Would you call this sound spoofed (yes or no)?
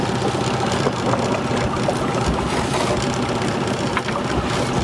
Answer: no